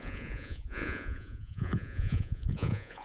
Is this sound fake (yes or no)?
yes